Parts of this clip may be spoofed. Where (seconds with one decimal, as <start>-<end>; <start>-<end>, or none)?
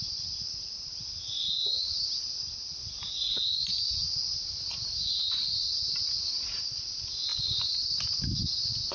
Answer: none